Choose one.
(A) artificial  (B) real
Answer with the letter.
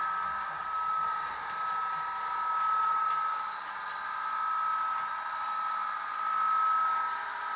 B